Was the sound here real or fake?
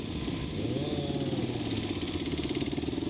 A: real